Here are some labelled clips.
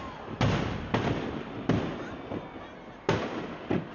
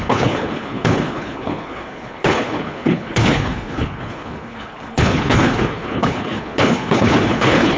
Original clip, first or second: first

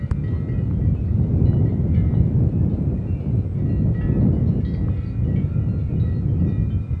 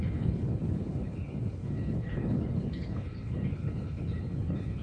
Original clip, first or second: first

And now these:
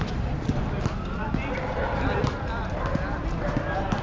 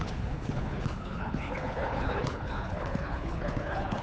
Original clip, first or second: first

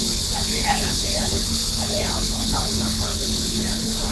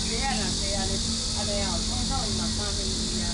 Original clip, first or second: second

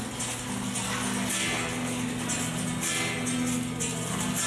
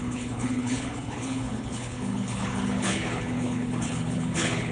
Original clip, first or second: first